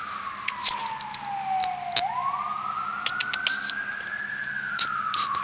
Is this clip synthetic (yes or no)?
no